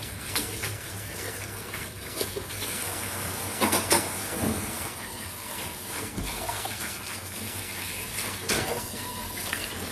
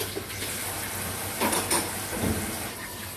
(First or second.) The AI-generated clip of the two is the first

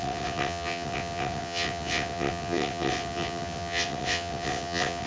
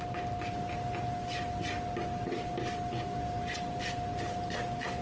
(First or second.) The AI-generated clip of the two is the first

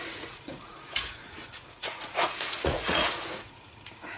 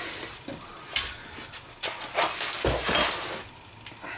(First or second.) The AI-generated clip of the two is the first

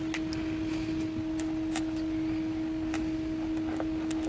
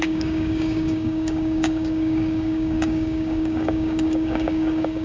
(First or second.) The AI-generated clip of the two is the second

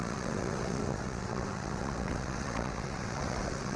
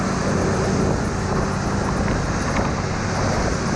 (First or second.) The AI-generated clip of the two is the first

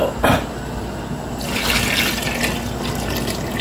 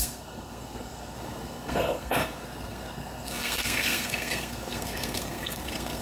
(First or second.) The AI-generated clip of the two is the second